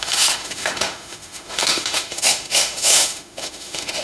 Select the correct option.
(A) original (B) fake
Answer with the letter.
B